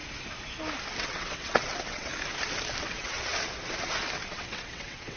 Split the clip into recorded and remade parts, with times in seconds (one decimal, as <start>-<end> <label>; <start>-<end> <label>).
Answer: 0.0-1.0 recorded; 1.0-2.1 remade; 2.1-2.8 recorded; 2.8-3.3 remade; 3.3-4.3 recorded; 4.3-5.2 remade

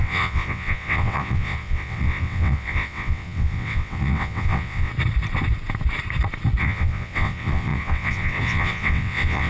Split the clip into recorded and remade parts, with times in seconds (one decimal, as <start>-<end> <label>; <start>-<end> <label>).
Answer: 0.0-4.9 remade; 4.9-6.6 recorded; 6.6-9.5 remade

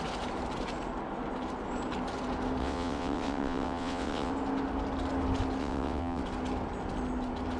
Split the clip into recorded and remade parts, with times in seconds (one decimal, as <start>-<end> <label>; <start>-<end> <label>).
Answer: 0.0-2.6 recorded; 2.6-4.3 remade; 4.3-5.6 recorded; 5.6-6.2 remade; 6.2-7.6 recorded